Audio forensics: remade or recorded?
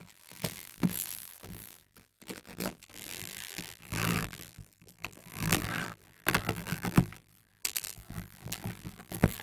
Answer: remade